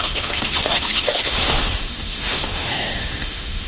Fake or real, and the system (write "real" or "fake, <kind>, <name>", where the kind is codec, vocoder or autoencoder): fake, autoencoder, DAC-VAE